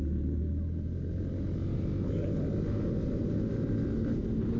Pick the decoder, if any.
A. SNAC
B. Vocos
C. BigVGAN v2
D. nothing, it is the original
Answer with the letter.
D